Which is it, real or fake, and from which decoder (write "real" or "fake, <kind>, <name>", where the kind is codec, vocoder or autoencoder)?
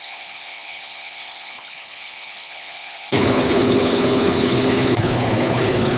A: fake, codec, HILCodec